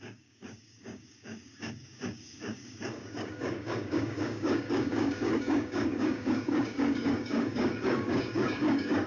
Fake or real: fake